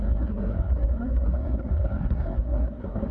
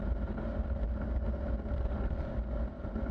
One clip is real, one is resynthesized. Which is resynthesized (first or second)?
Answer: first